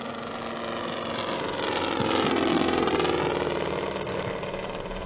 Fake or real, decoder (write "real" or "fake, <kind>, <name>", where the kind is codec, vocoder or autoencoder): real